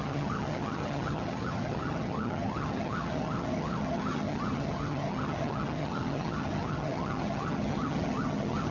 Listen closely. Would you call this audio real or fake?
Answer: fake